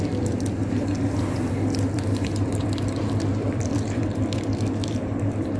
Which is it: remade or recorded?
remade